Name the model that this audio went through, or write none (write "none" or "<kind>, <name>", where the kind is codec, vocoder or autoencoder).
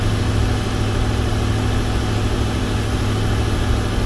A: none